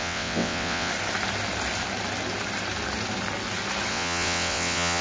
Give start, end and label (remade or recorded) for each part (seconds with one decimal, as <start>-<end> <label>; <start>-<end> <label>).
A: 0.0-0.9 remade; 0.9-3.9 recorded; 3.9-5.0 remade